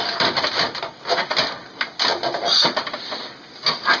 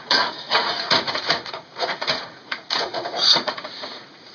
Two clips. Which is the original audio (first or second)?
first